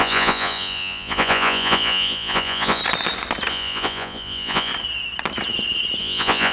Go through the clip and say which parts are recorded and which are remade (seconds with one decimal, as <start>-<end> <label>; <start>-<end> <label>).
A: 0.0-2.8 remade; 2.8-3.5 recorded; 3.5-4.7 remade; 4.7-6.0 recorded; 6.0-6.5 remade